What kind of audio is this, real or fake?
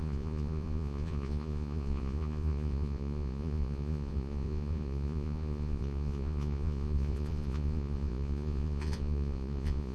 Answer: fake